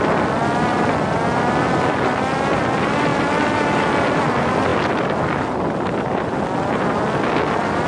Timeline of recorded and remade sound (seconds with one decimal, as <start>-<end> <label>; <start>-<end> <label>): 0.0-7.9 recorded